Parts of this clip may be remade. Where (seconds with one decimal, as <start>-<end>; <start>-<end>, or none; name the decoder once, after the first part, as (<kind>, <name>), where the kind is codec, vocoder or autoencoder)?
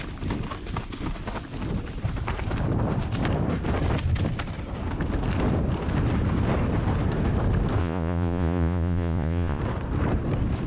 7.8-9.6 (vocoder, Vocos)